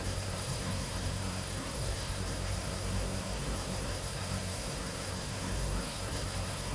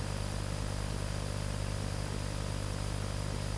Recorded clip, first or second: second